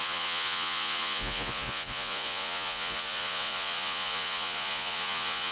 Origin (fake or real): fake